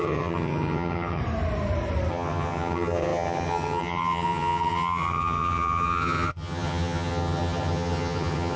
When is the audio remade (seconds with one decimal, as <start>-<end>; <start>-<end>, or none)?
0.0-1.2; 2.1-8.6